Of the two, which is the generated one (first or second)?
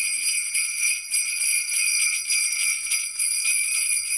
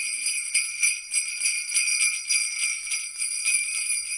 first